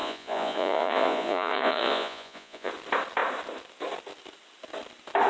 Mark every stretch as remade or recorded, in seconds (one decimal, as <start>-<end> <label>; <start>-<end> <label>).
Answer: 0.0-2.7 remade; 2.7-5.3 recorded